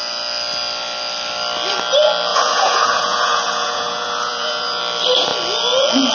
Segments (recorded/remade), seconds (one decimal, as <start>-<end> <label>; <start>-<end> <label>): 0.0-2.3 recorded; 2.3-4.8 remade; 4.8-6.1 recorded